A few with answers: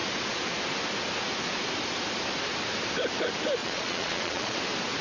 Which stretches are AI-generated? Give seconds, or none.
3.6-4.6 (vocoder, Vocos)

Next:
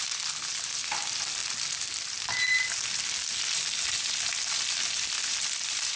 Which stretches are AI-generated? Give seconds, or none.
none

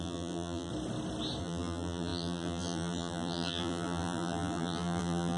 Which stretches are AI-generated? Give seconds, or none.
0.0-0.7 (vocoder, BigVGAN v2); 1.4-5.4

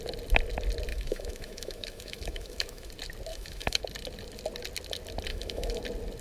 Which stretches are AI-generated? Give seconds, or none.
0.9-2.9 (autoencoder, DAC-VAE); 3.3-3.8; 5.3-5.8

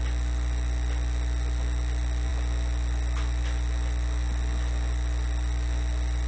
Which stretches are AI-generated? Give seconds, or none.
none